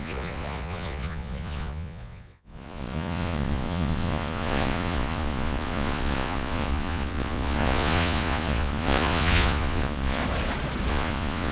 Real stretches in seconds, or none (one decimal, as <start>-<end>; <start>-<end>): 10.2-10.9